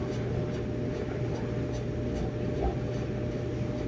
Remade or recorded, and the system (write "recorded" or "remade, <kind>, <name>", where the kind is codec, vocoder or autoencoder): recorded